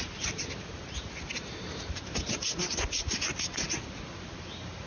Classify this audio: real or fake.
real